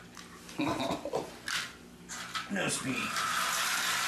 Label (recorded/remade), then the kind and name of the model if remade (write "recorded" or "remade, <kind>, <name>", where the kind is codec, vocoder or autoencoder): recorded